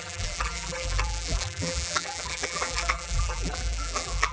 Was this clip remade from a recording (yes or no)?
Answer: yes